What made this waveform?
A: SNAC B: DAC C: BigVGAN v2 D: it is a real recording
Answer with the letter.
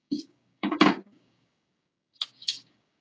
B